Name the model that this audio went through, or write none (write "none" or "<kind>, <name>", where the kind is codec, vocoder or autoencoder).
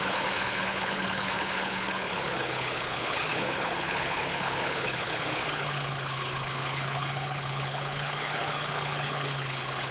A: codec, HILCodec